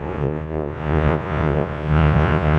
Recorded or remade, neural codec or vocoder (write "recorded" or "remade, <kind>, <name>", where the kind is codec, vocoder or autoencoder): remade, vocoder, Vocos